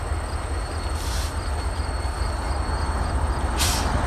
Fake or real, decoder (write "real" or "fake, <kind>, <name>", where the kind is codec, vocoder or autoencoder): real